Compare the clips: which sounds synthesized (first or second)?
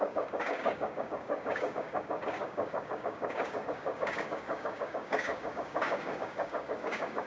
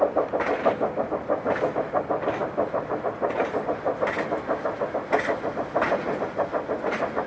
first